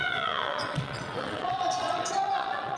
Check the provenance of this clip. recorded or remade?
remade